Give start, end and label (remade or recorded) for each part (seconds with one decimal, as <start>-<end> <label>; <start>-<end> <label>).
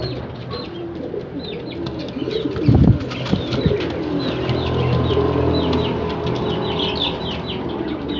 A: 0.0-8.2 recorded